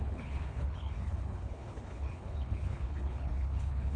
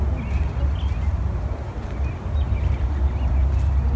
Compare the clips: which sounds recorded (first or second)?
second